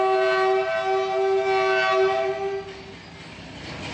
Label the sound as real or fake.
real